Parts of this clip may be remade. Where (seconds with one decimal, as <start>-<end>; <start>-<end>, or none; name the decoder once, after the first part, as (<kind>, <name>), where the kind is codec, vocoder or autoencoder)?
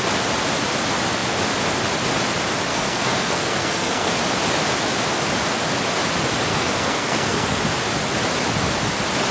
2.7-4.1 (codec, SNAC); 6.5-7.6